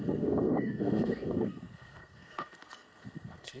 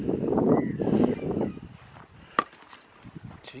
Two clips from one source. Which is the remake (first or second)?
first